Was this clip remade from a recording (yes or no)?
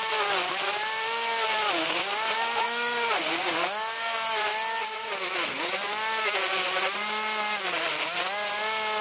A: no